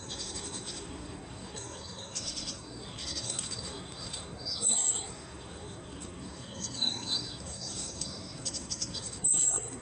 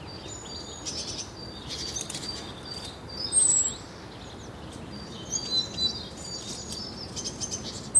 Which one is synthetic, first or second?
first